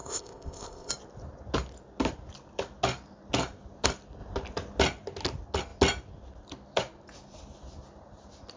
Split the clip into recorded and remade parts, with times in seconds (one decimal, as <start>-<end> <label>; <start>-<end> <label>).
0.0-0.9 remade; 0.9-8.6 recorded